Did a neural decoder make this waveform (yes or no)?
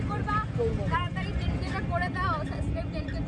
no